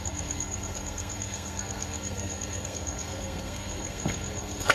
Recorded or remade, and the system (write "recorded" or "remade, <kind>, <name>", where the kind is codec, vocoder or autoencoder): remade, codec, SNAC